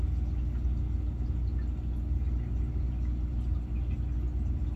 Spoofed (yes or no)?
no